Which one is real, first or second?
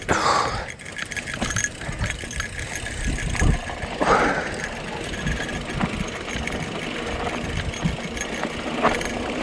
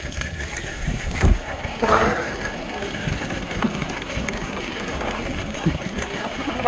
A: first